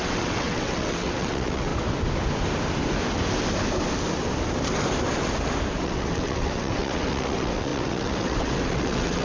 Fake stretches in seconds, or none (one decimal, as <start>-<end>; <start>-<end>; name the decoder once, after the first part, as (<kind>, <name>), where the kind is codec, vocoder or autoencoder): 0.0-1.7 (vocoder, WaveNeXt); 5.8-9.2